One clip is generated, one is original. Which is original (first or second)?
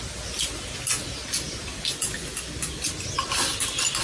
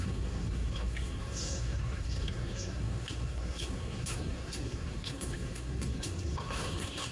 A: first